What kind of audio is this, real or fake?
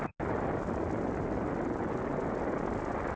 real